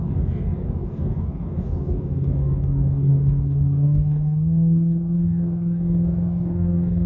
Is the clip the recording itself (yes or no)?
no